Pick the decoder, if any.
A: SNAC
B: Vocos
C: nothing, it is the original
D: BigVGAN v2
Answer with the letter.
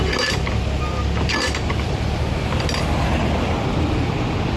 C